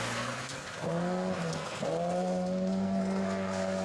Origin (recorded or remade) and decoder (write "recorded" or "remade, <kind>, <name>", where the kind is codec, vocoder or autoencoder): remade, codec, SNAC